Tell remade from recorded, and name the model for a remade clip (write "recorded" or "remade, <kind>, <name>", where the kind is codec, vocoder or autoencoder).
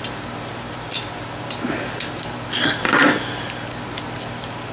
recorded